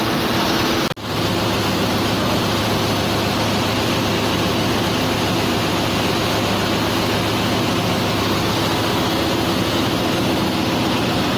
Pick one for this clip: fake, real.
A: real